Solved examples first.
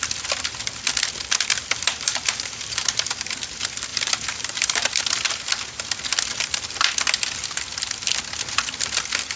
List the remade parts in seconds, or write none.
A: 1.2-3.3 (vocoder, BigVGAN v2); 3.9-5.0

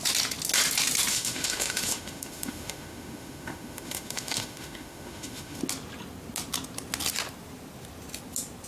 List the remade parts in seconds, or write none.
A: 1.1-5.6 (autoencoder, DAC-VAE)

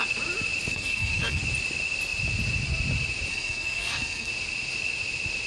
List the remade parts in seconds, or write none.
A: 0.7-1.4 (codec, SNAC); 3.3-4.3

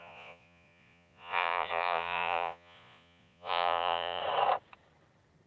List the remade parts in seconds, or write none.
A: 0.0-4.2 (vocoder, Vocos)